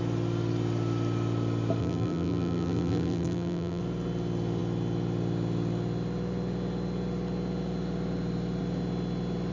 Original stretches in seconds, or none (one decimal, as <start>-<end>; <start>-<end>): 0.0-1.8; 3.8-9.5